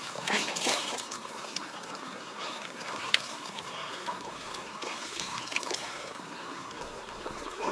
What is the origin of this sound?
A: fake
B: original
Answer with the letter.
A